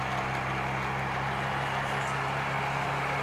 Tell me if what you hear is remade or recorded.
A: recorded